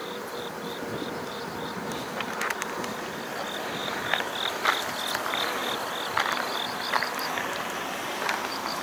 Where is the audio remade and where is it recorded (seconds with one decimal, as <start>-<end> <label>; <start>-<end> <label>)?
0.0-3.1 remade; 3.1-3.8 recorded; 3.8-4.3 remade; 4.3-8.8 recorded